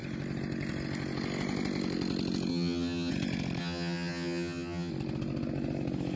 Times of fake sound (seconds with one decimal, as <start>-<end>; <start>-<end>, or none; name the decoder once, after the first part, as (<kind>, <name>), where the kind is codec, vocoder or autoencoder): 2.5-3.1 (vocoder, HiFi-GAN); 3.6-4.9